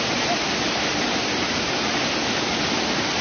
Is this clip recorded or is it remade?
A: recorded